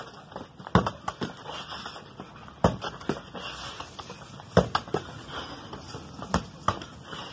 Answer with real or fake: real